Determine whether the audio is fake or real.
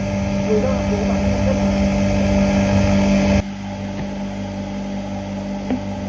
real